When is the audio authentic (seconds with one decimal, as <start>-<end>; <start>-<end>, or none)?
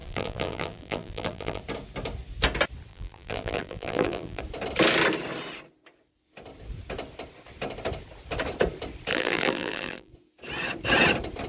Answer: 1.6-2.9; 4.4-9.1; 10.1-11.5